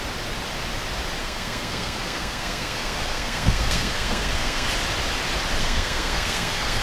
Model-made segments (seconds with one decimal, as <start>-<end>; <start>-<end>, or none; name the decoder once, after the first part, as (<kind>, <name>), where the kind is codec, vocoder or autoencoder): 1.2-4.7 (codec, SNAC); 5.6-6.8